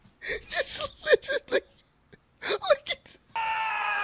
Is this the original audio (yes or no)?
yes